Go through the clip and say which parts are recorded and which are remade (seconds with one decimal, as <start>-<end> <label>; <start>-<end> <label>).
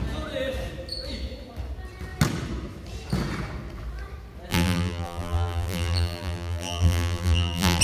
0.0-4.5 recorded; 4.5-7.8 remade